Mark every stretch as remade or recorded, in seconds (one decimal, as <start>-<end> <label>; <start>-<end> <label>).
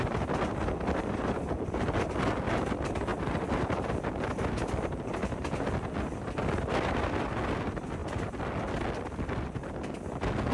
0.0-3.1 recorded; 3.1-5.7 remade; 5.7-8.0 recorded; 8.0-8.9 remade; 8.9-10.5 recorded